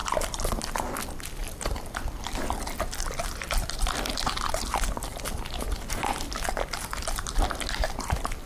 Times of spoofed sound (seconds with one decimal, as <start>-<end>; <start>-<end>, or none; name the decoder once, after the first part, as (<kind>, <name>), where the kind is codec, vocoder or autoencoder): none